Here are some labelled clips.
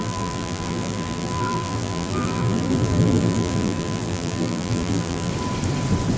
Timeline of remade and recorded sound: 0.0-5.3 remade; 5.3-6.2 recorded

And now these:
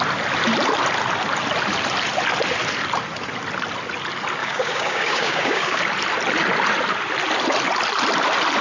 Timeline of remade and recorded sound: 0.0-4.4 recorded; 4.4-5.8 remade; 5.8-8.6 recorded

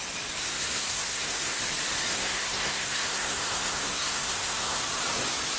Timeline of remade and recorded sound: 0.0-0.4 recorded; 0.4-1.6 remade; 1.6-2.1 recorded; 2.1-4.8 remade; 4.8-5.6 recorded

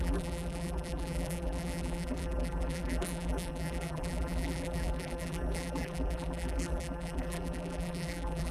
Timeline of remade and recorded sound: 0.0-8.5 remade